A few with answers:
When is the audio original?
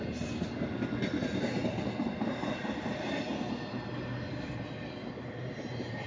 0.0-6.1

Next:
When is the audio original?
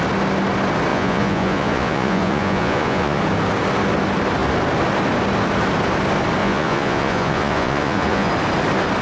0.0-0.9; 3.2-6.4; 8.3-9.0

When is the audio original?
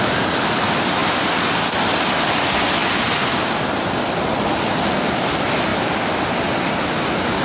0.0-1.0; 1.6-2.8; 4.6-5.7; 6.6-7.4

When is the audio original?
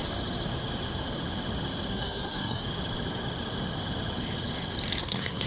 0.0-1.9; 2.7-5.0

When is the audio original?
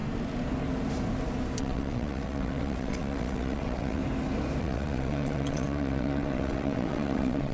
0.0-1.6; 4.0-4.6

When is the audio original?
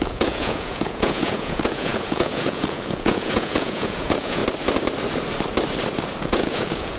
4.4-6.2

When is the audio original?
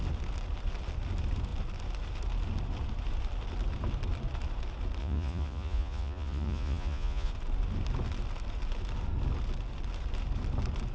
0.0-5.0; 7.3-10.9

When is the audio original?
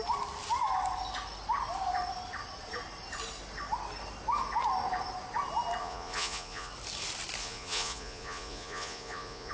0.0-5.8; 6.7-7.4